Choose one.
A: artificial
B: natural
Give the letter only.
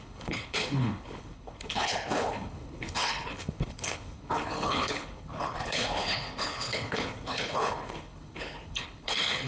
A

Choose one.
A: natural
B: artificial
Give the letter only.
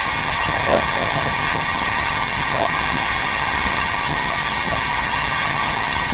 B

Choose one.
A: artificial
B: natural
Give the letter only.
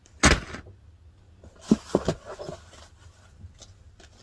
B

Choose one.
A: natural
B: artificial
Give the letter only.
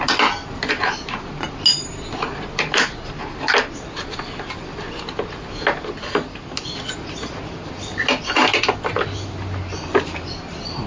A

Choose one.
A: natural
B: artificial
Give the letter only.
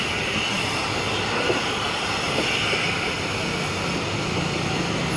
A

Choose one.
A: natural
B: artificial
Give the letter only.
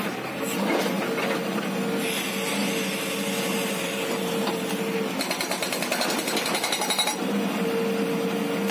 A